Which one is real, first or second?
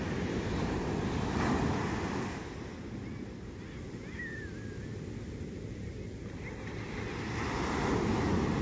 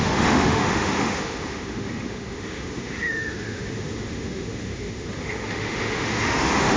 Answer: first